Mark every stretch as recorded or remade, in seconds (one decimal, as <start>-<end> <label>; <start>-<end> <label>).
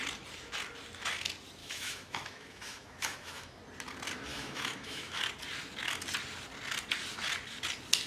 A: 0.0-1.6 recorded; 1.6-3.6 remade; 3.6-4.3 recorded; 4.3-5.2 remade; 5.2-8.1 recorded